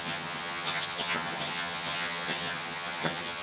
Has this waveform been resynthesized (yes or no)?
yes